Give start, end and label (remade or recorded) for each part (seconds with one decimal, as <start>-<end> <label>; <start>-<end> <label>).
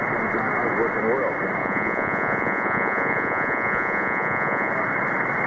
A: 0.0-1.6 recorded; 1.6-4.7 remade; 4.7-5.5 recorded